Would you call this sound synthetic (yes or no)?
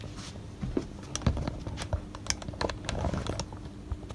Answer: no